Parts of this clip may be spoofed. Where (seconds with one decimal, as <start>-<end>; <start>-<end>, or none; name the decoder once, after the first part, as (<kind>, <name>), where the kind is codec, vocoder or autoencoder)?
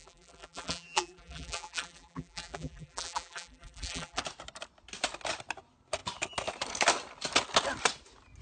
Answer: 0.0-4.2 (vocoder, BigVGAN v2)